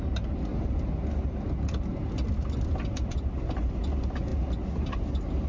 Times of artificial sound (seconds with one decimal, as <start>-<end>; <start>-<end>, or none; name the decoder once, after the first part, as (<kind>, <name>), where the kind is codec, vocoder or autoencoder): none